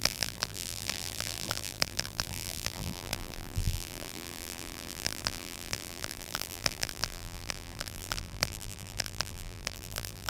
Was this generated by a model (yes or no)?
yes